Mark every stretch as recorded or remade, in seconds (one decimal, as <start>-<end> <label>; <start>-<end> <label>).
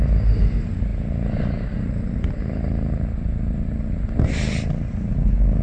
0.0-5.6 recorded